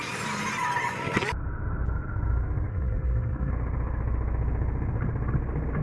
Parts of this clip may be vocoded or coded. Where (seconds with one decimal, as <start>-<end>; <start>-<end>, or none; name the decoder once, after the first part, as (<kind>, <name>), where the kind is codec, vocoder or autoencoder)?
2.7-3.5 (codec, SNAC)